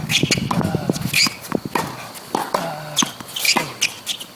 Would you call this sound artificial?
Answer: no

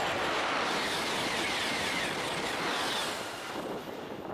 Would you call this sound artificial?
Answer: no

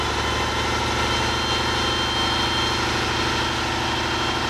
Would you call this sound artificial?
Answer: no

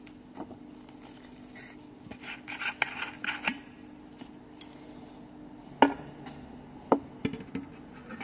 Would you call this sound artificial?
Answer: no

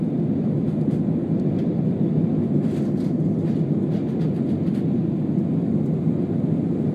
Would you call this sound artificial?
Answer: no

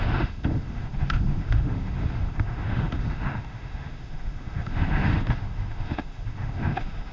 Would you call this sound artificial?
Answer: yes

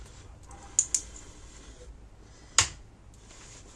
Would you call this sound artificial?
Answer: no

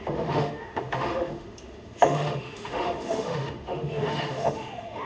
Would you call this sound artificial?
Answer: yes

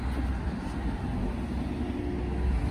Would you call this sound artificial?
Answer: no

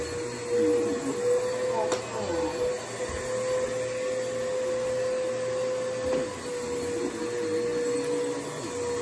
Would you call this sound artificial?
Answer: no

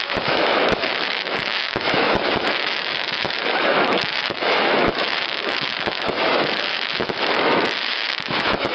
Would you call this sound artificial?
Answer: yes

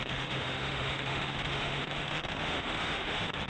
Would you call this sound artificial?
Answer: yes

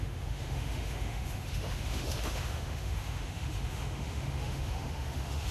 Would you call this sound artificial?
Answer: yes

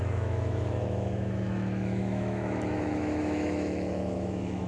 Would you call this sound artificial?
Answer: yes